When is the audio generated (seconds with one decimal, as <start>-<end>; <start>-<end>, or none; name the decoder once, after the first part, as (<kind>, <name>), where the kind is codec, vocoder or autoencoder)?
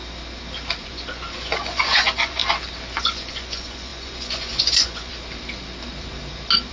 0.8-2.4 (vocoder, Vocos); 3.0-5.1